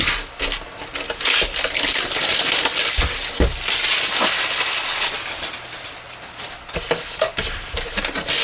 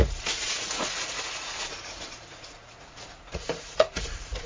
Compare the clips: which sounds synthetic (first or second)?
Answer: second